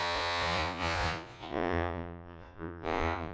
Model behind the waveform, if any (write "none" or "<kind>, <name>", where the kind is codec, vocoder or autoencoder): vocoder, Vocos